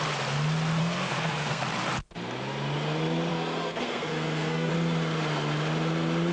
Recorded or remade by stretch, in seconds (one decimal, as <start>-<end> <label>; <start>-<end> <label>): 0.0-0.8 recorded; 0.8-1.6 remade; 1.6-3.3 recorded; 3.3-4.7 remade; 4.7-6.3 recorded